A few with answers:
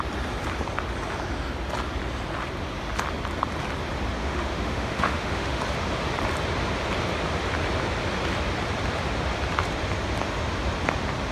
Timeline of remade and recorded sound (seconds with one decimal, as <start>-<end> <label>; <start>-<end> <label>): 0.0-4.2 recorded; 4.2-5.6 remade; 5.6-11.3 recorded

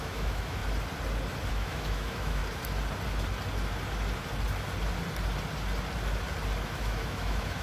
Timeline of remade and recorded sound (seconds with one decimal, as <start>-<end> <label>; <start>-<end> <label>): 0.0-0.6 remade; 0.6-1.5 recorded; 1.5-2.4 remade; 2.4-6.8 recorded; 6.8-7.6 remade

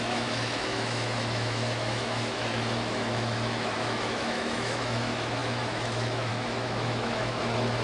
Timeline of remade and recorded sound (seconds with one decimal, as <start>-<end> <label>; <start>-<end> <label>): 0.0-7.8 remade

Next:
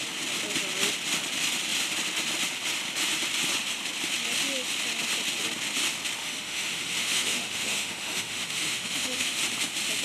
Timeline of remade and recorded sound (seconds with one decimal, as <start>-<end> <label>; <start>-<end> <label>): 0.0-6.2 recorded; 6.2-9.4 remade; 9.4-10.0 recorded